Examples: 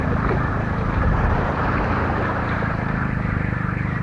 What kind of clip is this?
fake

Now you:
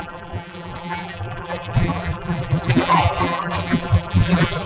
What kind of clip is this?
fake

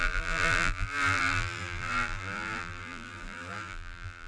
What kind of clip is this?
fake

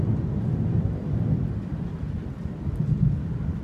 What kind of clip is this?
real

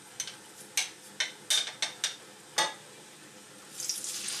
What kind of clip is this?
real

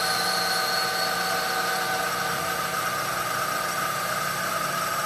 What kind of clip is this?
real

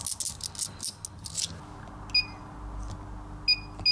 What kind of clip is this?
real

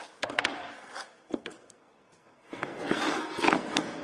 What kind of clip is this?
fake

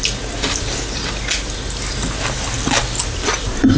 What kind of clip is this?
real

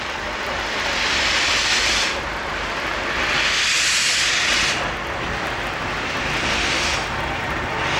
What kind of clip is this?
real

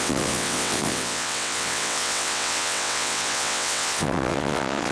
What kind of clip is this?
fake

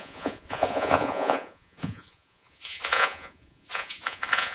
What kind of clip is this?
fake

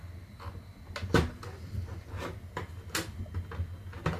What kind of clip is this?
real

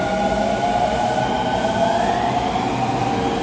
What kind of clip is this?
real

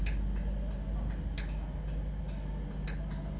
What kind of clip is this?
real